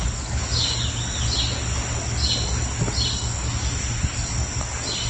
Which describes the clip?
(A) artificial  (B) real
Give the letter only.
B